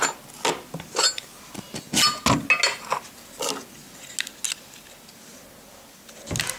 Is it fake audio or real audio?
real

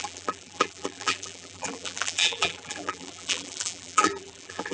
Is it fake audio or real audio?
fake